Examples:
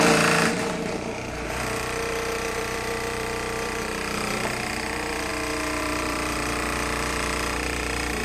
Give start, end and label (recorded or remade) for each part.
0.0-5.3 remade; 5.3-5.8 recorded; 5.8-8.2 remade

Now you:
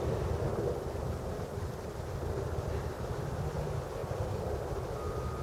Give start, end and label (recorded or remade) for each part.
0.0-5.4 recorded

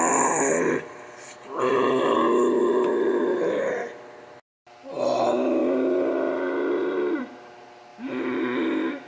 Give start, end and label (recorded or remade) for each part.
0.0-2.6 recorded; 2.6-3.2 remade; 3.2-9.1 recorded

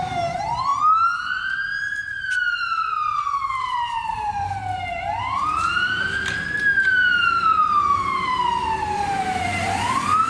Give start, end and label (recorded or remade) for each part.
0.0-0.7 remade; 0.7-3.7 recorded; 3.7-4.6 remade; 4.6-5.2 recorded; 5.2-10.3 remade